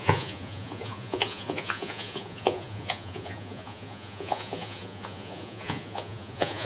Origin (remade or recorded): remade